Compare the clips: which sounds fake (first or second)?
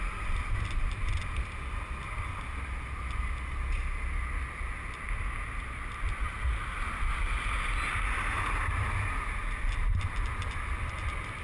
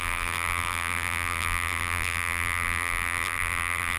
second